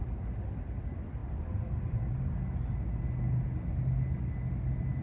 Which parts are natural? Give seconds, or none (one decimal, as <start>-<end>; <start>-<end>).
0.0-5.0